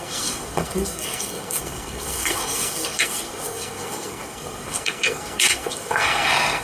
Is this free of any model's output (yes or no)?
no